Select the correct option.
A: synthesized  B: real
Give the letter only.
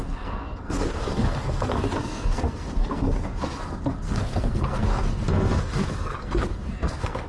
A